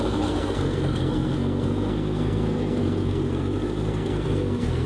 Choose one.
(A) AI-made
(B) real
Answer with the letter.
A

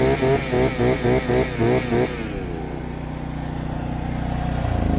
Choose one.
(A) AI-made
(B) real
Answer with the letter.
B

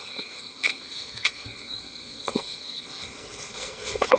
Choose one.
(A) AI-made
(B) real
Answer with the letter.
A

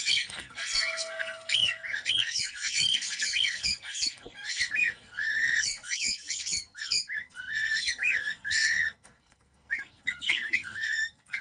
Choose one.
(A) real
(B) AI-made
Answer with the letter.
B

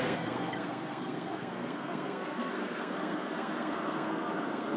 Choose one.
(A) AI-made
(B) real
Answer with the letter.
A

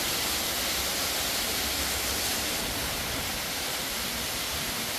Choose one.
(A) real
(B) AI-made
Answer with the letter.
A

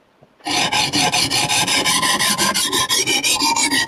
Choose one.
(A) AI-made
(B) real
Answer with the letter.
B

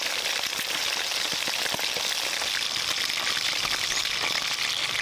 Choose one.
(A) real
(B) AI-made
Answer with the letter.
A